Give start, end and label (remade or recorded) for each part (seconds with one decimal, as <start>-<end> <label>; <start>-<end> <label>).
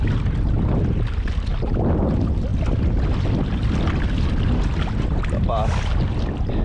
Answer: 0.0-6.6 recorded